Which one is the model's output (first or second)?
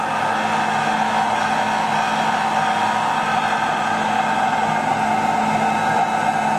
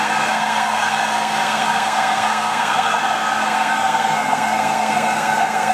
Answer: second